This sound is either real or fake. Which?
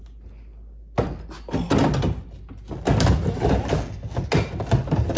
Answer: real